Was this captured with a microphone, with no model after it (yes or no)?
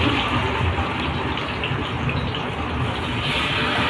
yes